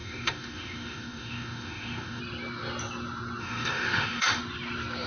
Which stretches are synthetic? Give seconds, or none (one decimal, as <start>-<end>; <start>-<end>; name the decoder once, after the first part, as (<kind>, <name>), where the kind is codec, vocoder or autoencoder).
0.0-2.2 (autoencoder, DAC-VAE); 3.4-4.4